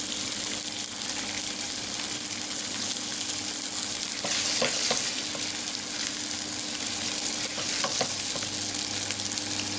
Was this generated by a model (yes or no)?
no